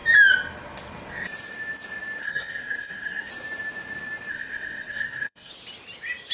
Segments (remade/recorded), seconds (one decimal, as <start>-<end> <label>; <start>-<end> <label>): 0.0-2.2 recorded; 2.2-3.3 remade; 3.3-4.3 recorded; 4.3-5.5 remade; 5.5-6.3 recorded